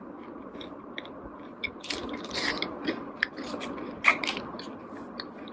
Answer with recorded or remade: remade